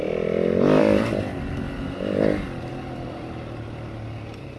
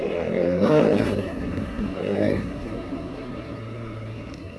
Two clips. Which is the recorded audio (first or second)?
first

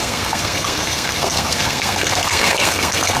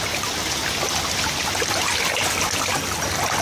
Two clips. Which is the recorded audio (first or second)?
second